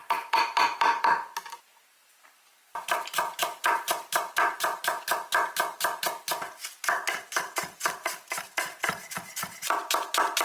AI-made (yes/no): no